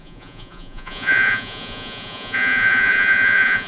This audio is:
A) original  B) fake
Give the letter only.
B